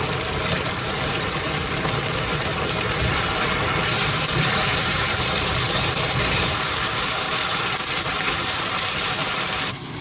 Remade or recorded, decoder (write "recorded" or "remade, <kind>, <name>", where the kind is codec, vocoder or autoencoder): remade, vocoder, BigVGAN v2